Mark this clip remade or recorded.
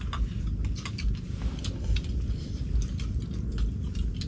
recorded